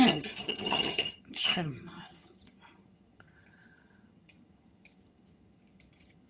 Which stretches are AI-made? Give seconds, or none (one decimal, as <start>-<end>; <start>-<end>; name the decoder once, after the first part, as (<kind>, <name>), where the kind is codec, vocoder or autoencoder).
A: 0.0-6.3 (vocoder, HiFi-GAN)